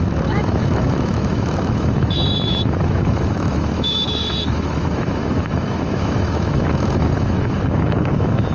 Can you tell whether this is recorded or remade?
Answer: remade